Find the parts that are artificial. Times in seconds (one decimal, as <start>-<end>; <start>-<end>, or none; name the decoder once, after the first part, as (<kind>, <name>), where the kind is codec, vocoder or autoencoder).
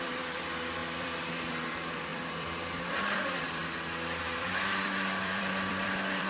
0.0-3.6 (vocoder, BigVGAN v2); 4.2-6.3